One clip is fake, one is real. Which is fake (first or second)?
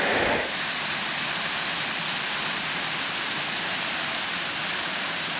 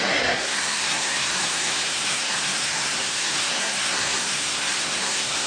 second